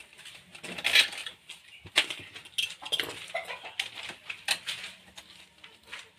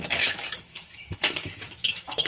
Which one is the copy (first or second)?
second